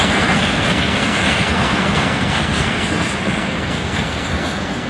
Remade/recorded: remade